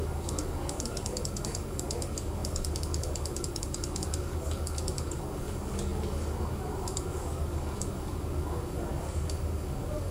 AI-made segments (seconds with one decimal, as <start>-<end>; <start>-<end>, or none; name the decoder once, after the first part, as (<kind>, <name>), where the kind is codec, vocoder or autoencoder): 0.0-10.1 (codec, DAC)